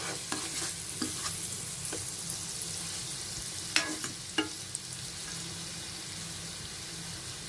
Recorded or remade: recorded